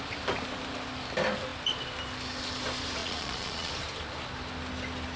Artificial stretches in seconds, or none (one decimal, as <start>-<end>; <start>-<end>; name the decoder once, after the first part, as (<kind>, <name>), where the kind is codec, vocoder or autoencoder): 3.0-3.7 (vocoder, Vocos)